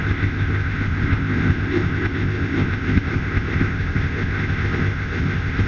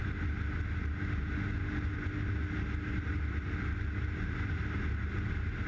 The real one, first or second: second